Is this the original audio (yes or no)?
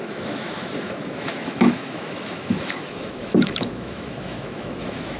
no